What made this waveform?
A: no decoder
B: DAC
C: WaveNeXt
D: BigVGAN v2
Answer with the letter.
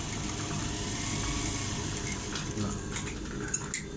A